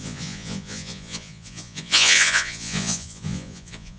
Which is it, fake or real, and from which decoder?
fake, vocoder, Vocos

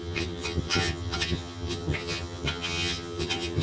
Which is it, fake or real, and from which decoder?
fake, vocoder, HiFi-GAN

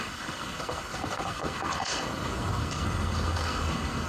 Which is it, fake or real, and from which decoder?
fake, codec, SNAC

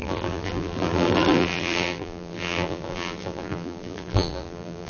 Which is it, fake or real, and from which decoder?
fake, vocoder, BigVGAN v2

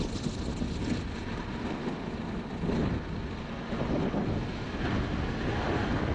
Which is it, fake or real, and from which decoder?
real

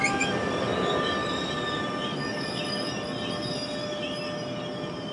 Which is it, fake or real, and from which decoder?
real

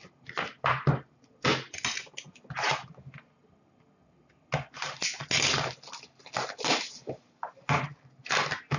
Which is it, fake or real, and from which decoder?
real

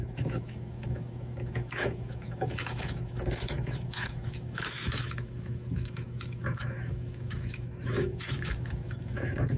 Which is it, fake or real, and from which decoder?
fake, autoencoder, DAC-VAE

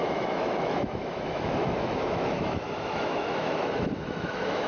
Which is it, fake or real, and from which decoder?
fake, autoencoder, DAC-VAE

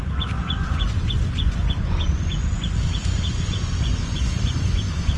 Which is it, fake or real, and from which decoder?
fake, vocoder, Vocos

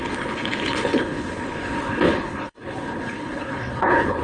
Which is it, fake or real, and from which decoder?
fake, codec, HILCodec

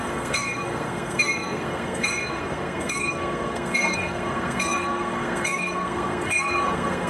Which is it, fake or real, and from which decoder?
fake, codec, SNAC